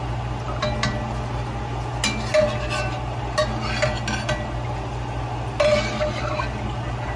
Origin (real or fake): real